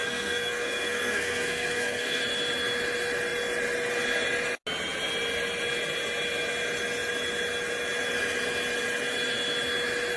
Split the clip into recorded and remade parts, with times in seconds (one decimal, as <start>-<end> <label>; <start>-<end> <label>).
0.0-2.2 remade; 2.2-10.2 recorded